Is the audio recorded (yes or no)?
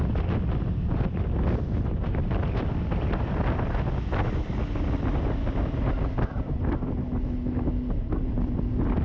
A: yes